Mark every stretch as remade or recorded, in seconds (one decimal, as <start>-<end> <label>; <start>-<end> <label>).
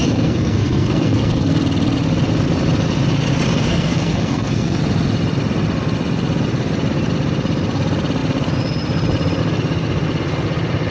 0.0-1.6 remade; 1.6-3.5 recorded; 3.5-4.8 remade; 4.8-10.9 recorded